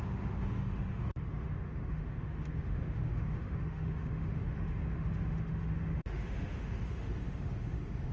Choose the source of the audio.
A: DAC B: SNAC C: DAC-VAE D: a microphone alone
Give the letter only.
C